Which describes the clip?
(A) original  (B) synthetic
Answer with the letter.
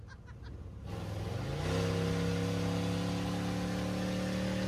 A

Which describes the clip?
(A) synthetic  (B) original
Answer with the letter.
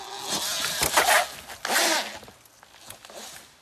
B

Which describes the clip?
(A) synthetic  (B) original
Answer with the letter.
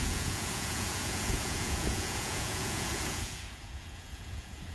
A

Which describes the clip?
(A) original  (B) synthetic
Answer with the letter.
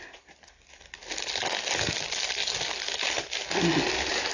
A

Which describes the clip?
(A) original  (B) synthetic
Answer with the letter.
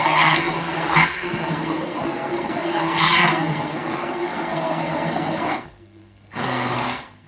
B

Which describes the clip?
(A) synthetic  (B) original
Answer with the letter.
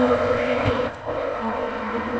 A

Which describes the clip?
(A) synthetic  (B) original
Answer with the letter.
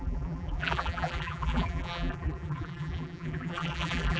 A